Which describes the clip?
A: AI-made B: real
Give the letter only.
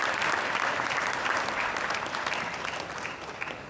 B